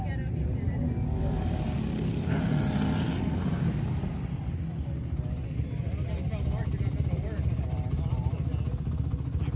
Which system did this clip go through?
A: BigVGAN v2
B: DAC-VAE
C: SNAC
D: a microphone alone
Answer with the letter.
D